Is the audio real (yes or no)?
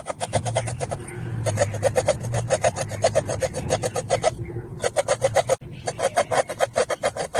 yes